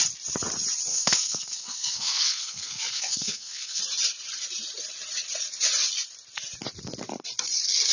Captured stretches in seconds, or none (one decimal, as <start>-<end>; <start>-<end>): 0.0-0.9; 3.8-7.9